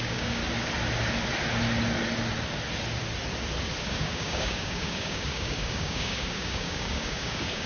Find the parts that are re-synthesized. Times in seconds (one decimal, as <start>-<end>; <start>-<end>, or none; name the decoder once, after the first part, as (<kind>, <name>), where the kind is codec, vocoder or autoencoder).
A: 0.0-0.4 (codec, DAC); 3.8-7.7

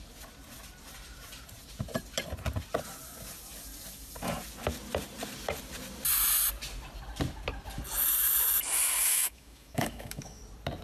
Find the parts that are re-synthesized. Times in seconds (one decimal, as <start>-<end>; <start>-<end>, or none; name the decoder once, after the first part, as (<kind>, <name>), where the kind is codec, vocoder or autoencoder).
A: 9.0-10.4 (autoencoder, DAC-VAE)

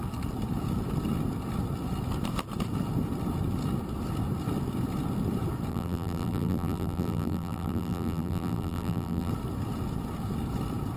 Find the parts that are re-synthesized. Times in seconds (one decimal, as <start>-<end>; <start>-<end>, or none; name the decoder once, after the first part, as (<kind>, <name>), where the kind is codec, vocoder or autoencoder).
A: 5.7-9.3 (vocoder, BigVGAN v2)